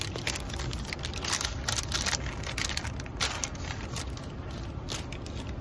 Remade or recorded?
recorded